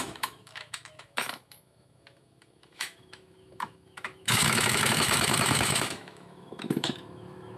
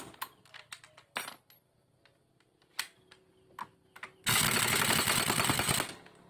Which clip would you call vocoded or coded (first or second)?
first